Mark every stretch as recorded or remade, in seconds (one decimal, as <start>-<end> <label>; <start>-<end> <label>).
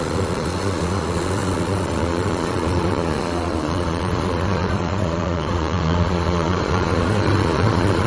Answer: 0.0-8.1 remade